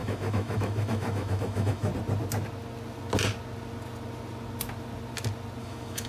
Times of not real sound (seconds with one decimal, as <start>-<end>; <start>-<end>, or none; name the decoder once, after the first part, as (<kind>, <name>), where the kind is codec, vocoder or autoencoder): 0.0-1.9 (autoencoder, DAC-VAE); 5.6-6.1

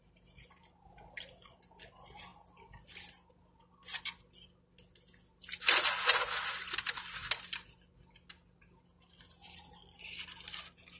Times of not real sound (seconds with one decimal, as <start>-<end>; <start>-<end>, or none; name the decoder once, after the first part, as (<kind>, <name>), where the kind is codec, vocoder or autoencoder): none

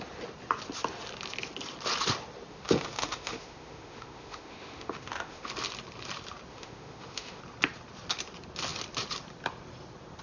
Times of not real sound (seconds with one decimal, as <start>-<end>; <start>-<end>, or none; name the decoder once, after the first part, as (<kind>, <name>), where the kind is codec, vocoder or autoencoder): 2.5-5.5 (autoencoder, DAC-VAE); 6.5-7.4

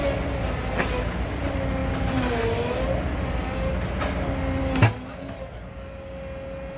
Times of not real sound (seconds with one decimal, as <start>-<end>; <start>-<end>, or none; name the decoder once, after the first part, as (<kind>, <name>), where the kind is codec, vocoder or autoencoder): none

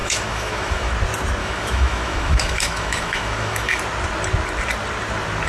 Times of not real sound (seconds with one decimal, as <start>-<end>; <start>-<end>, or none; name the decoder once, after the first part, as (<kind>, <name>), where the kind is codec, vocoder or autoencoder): 0.0-0.9 (autoencoder, DAC-VAE); 1.4-3.8